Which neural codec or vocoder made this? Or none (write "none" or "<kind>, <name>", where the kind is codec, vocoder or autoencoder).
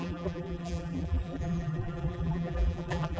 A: vocoder, BigVGAN v2